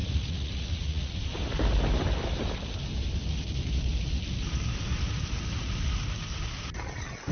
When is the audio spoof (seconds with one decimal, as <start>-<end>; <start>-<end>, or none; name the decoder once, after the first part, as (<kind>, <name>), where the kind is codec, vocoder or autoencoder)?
0.0-1.2 (vocoder, Vocos)